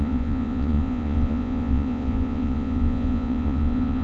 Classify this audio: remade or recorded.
remade